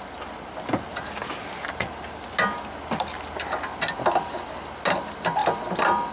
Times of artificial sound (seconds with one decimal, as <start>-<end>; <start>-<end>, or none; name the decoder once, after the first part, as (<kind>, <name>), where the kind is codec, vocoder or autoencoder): none